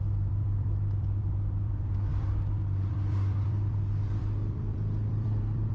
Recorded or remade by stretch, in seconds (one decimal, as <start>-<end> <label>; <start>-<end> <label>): 0.0-5.7 remade